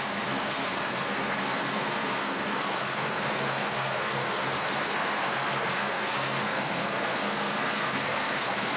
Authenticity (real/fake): fake